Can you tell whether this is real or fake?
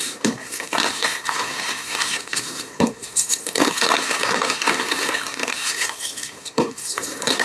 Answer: fake